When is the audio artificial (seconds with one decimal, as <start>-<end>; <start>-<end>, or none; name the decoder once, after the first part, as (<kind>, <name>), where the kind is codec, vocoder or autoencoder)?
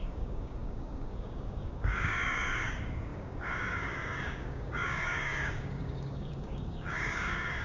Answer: 0.0-7.6 (codec, DAC)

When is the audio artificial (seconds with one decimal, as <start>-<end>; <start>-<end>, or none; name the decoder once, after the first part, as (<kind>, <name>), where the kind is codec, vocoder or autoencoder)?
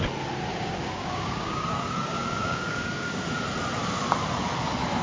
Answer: 0.5-3.2 (codec, DAC)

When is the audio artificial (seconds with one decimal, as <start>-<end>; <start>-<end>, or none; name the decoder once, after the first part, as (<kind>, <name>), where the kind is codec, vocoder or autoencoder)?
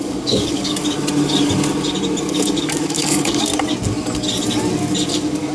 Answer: 0.0-0.8 (codec, DAC); 2.2-3.5; 5.1-5.5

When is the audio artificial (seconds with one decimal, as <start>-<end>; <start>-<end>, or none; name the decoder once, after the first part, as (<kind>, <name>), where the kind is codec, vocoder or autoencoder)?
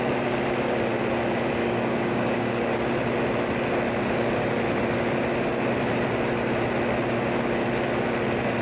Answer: 1.6-2.6 (codec, DAC)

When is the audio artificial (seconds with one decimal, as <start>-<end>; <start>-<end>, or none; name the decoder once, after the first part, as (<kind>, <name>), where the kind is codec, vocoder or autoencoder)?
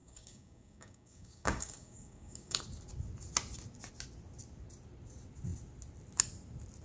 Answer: 0.0-2.6 (codec, DAC)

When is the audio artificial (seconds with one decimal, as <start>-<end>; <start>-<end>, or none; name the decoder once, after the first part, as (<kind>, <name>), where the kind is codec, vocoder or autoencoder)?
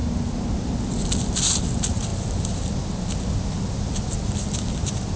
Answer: none